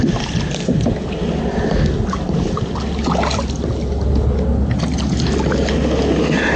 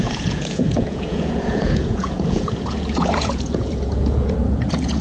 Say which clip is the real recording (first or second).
first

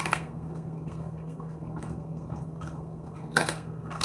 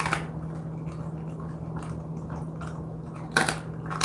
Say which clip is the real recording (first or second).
second